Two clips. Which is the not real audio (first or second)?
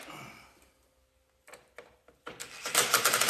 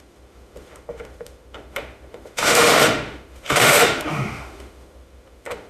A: second